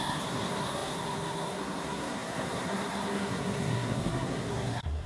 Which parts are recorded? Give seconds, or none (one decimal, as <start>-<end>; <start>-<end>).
none